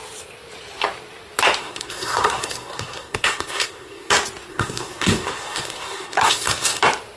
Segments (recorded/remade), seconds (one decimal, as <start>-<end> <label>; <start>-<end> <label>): 0.0-1.6 recorded; 1.6-4.1 remade; 4.1-4.5 recorded; 4.5-6.8 remade; 6.8-7.2 recorded